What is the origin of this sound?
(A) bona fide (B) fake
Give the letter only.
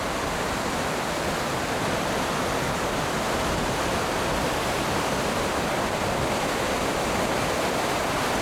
B